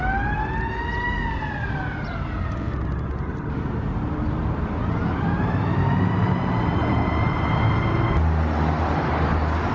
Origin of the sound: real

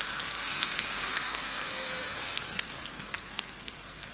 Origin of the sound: fake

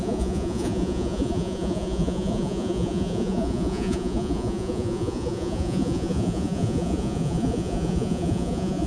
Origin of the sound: fake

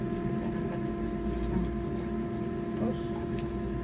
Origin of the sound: real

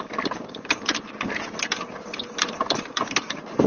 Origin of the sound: fake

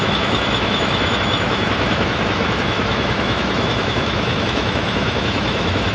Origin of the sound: fake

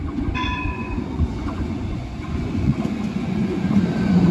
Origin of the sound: fake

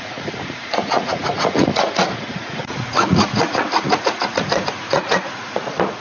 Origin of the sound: fake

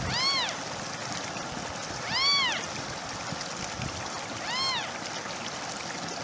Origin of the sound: real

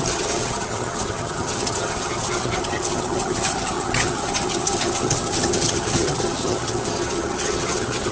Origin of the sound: fake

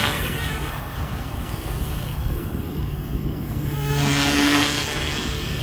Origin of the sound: fake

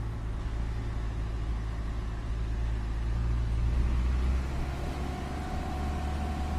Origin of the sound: real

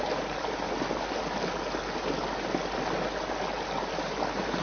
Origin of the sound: real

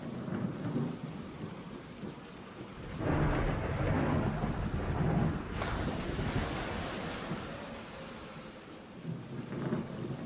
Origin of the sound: real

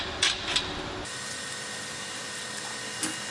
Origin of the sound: real